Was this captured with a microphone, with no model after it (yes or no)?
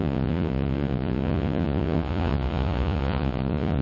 no